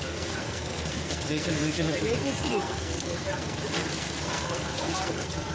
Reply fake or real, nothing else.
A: fake